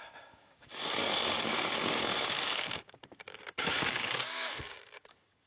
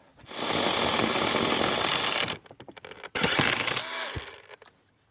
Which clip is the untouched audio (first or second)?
second